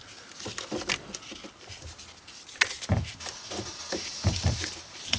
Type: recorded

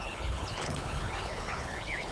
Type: remade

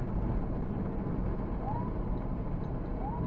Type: recorded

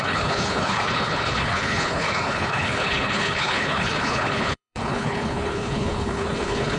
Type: remade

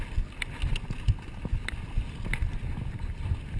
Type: recorded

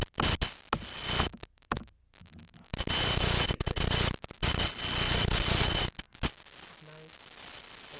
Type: recorded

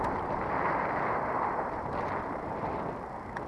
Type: recorded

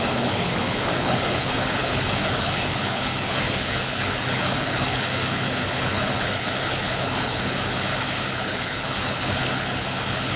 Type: remade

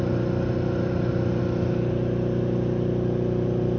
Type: recorded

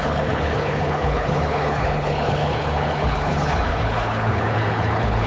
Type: remade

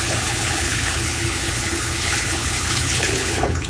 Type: remade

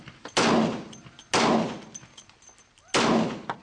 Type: recorded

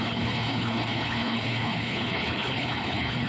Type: remade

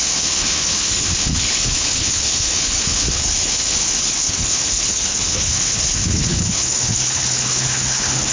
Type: remade